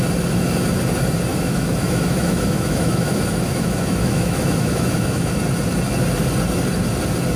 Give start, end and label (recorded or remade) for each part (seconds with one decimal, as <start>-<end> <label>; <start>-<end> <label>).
0.0-1.3 recorded; 1.3-5.4 remade; 5.4-7.4 recorded